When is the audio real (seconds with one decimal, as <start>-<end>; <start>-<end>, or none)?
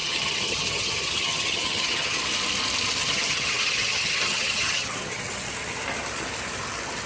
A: 2.2-3.0; 5.2-7.1